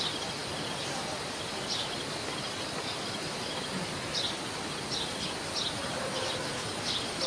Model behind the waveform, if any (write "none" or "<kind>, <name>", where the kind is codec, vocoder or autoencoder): none